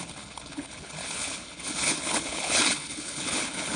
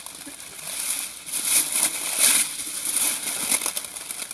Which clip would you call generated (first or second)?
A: first